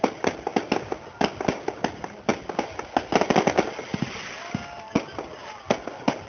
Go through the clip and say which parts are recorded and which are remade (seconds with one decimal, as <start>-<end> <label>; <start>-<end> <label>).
0.0-6.3 recorded